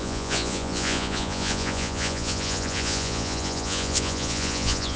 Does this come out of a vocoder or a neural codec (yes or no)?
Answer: yes